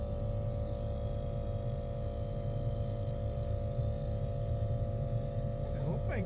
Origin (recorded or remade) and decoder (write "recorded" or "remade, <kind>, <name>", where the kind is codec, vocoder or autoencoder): recorded